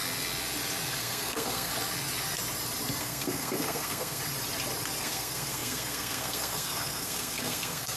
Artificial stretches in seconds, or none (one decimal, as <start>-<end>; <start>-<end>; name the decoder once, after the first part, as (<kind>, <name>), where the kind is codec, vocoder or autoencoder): 1.0-1.7 (codec, SNAC); 3.0-4.2; 5.0-8.0